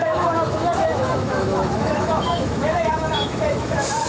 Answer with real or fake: fake